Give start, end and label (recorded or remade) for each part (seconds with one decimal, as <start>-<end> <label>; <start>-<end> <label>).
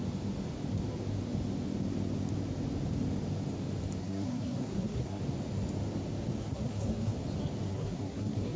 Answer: 0.0-4.0 recorded; 4.0-5.2 remade; 5.2-6.4 recorded; 6.4-7.1 remade; 7.1-7.7 recorded; 7.7-8.6 remade